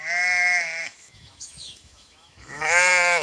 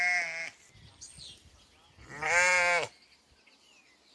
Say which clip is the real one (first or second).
second